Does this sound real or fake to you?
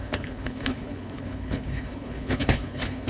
fake